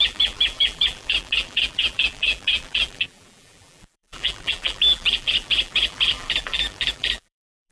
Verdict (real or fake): fake